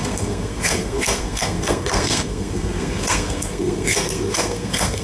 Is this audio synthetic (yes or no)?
yes